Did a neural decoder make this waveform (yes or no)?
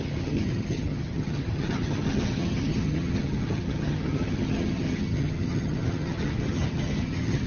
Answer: yes